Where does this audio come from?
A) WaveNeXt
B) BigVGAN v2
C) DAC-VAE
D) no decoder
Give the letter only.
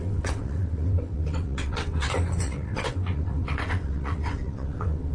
A